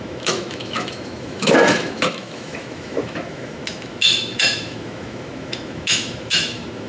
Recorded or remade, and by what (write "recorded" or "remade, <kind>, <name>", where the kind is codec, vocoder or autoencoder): remade, autoencoder, DAC-VAE